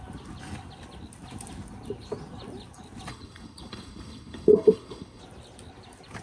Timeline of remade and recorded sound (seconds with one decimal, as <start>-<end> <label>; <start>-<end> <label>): 0.0-3.1 recorded; 3.1-5.2 remade; 5.2-6.2 recorded